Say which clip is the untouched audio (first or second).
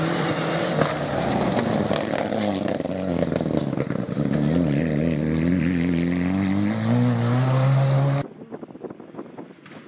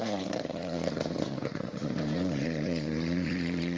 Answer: first